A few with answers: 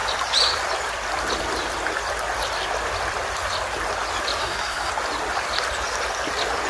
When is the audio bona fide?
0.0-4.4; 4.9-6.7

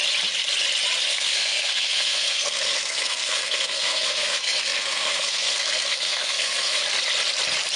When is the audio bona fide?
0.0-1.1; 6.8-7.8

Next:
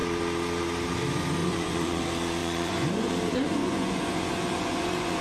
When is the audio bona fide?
0.0-1.4; 2.0-2.4